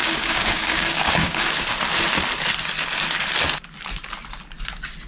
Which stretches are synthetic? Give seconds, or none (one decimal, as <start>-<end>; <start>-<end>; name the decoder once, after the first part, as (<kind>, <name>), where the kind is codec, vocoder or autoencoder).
0.0-1.4 (codec, DAC)